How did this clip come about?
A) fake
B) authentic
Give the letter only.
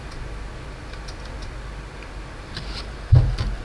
B